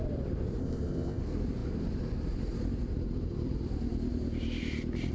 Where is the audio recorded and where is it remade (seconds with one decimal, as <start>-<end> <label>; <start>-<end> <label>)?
0.0-0.6 recorded; 0.6-1.2 remade; 1.2-5.1 recorded